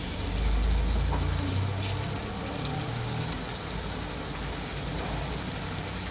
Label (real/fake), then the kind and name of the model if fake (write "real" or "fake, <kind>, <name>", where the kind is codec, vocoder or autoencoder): real